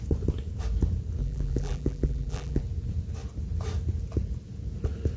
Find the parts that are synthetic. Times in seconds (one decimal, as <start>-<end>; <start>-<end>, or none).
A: 1.2-2.6